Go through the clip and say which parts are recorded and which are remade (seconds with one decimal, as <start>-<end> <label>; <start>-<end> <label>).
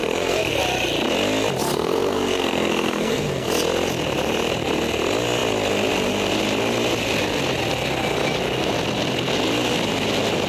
0.0-0.6 remade; 0.6-1.7 recorded; 1.7-3.5 remade; 3.5-10.5 recorded